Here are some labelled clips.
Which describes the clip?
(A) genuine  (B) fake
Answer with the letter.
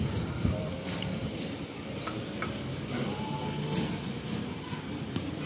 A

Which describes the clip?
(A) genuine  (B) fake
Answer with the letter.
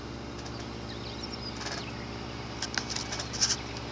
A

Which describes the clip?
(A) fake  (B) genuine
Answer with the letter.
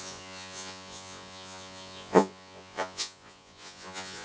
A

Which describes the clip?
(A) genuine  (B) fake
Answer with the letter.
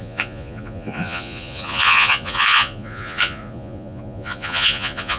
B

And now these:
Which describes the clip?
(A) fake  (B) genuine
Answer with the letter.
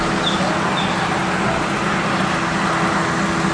B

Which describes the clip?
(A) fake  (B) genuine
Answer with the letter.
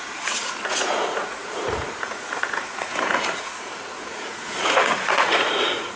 A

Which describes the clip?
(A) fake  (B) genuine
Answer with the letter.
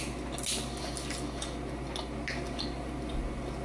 B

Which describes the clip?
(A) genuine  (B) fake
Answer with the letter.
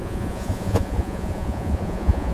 B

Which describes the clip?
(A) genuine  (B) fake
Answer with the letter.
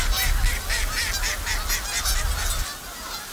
A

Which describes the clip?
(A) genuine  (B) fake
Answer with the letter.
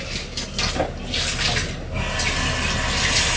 A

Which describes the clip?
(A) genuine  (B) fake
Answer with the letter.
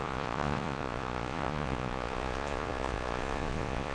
B